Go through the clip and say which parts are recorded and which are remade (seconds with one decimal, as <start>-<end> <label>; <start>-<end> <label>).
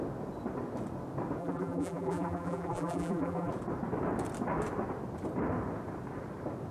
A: 0.0-1.4 recorded; 1.4-3.5 remade; 3.5-6.7 recorded